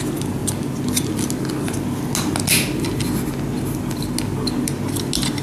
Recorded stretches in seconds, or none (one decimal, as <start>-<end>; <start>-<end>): 0.0-5.4